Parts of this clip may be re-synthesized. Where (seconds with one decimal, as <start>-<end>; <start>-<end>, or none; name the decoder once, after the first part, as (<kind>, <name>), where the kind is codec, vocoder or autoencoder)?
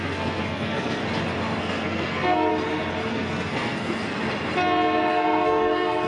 0.0-1.0 (codec, SNAC); 1.6-2.5; 3.1-4.2; 5.1-6.1